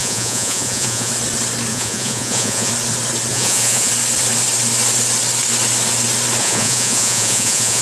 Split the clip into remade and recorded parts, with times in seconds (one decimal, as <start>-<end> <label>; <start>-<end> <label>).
0.0-1.1 remade; 1.1-1.7 recorded; 1.7-2.7 remade; 2.7-3.3 recorded; 3.3-3.9 remade; 3.9-6.4 recorded; 6.4-7.8 remade